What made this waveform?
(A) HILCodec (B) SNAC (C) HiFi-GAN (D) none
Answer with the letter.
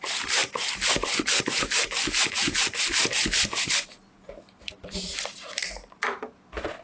D